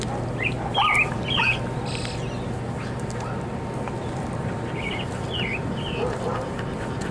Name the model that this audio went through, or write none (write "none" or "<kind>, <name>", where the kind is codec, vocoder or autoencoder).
none